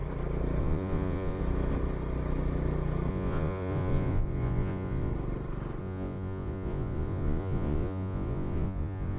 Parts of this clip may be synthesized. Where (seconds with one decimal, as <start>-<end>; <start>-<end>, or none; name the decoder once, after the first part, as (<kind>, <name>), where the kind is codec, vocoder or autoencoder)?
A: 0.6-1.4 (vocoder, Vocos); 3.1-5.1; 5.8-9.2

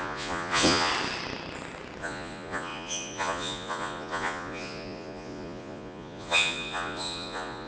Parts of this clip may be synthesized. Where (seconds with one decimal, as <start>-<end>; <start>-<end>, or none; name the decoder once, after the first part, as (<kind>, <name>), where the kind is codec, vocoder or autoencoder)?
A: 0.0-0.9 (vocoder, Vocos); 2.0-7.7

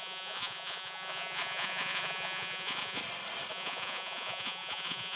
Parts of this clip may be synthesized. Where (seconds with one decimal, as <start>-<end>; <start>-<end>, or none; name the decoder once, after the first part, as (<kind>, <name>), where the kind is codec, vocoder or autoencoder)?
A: 0.0-3.0 (vocoder, Vocos); 3.5-5.2

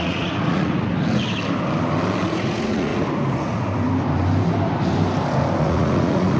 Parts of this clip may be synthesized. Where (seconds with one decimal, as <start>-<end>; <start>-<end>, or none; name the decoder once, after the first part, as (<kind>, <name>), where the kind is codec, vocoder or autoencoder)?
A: 0.0-0.9 (vocoder, Vocos); 2.2-2.9; 5.6-6.4

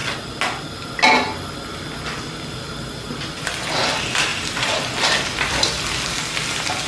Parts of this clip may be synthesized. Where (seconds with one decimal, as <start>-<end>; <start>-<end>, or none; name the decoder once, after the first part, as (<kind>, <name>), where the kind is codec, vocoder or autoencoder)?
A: none